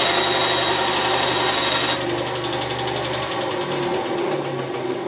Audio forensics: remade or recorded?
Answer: recorded